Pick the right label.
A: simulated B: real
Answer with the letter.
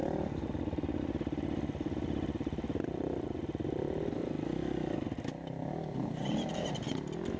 B